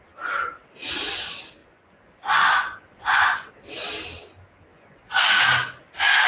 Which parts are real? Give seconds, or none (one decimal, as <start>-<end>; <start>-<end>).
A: 0.0-1.6; 3.5-4.7; 5.2-6.3